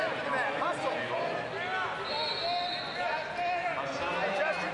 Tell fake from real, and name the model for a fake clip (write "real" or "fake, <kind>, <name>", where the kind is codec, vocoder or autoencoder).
real